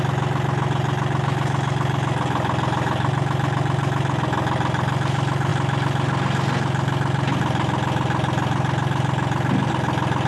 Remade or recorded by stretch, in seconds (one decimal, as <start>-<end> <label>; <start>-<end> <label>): 0.0-10.3 recorded